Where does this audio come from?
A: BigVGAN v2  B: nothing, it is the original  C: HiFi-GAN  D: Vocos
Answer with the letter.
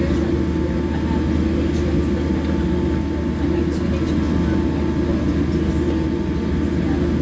B